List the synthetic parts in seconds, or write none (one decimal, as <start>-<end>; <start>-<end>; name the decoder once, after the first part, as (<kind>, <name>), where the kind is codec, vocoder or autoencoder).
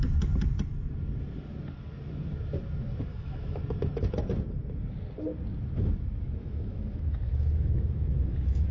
3.1-3.6 (autoencoder, DAC-VAE); 6.4-8.7